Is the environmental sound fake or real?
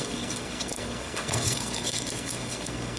fake